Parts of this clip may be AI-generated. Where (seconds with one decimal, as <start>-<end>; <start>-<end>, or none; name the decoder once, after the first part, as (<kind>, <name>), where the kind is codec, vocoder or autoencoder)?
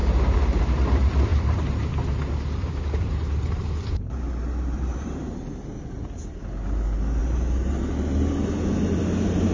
0.0-0.6 (vocoder, BigVGAN v2); 1.3-6.4; 7.2-7.9